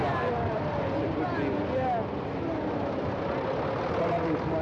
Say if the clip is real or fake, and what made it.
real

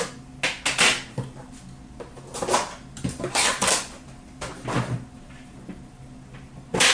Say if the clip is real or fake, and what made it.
real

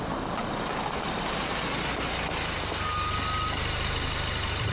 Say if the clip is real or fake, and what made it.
real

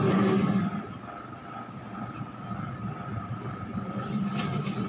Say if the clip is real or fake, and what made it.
fake, vocoder, BigVGAN v2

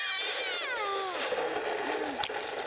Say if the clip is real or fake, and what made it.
real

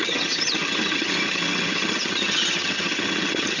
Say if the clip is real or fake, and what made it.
fake, vocoder, HiFi-GAN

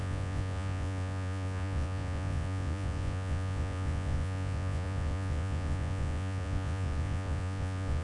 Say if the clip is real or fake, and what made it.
fake, vocoder, Vocos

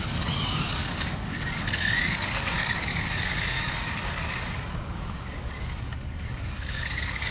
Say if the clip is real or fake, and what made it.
fake, codec, DAC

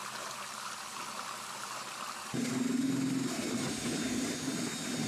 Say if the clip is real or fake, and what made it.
real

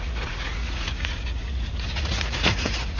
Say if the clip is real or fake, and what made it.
fake, vocoder, Vocos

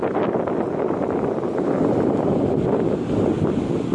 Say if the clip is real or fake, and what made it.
real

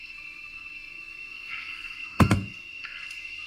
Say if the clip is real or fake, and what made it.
fake, codec, SNAC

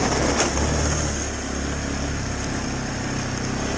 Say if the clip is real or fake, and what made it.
real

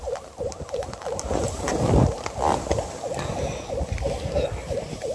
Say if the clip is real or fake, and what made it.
real